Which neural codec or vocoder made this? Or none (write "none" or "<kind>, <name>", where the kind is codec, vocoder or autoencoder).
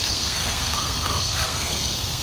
codec, SNAC